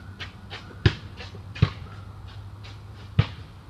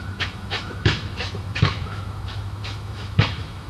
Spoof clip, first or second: second